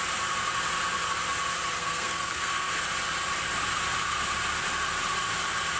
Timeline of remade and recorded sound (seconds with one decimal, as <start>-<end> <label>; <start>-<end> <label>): 0.0-1.8 recorded; 1.8-2.7 remade; 2.7-5.8 recorded